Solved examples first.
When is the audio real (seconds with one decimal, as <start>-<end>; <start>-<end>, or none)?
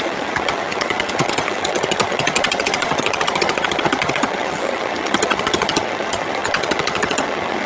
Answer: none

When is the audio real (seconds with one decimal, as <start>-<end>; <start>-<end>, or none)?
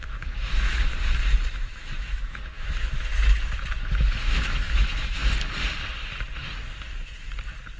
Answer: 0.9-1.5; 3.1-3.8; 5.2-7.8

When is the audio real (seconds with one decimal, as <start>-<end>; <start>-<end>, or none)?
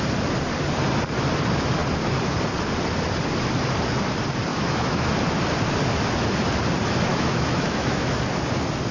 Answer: 0.0-4.5; 5.1-7.1; 8.3-8.9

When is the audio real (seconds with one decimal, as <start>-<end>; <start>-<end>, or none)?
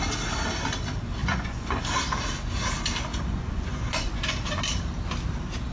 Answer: 0.0-1.2; 1.8-3.1; 4.2-5.7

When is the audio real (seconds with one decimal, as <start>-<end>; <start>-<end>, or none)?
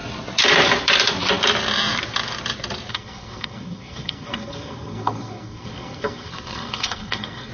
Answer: 0.0-2.9